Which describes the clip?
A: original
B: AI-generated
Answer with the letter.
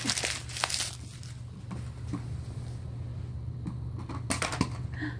A